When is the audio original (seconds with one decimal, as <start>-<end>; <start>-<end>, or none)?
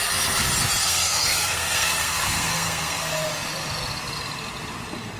0.0-0.8; 3.3-5.2